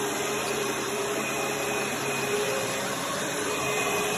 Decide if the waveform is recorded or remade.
remade